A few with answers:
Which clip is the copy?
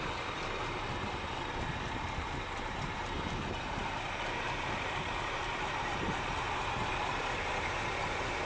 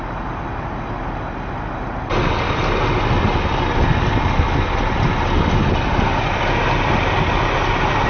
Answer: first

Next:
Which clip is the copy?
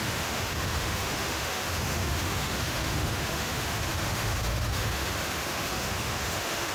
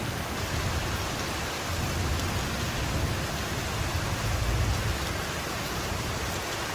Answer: first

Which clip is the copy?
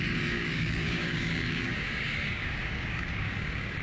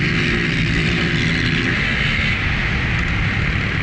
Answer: first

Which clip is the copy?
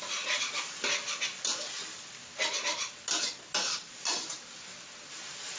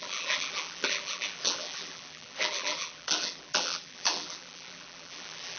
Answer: second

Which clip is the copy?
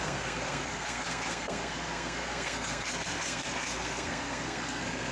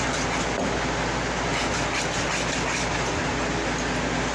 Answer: first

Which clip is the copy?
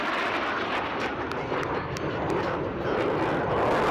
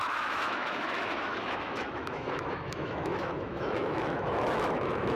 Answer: second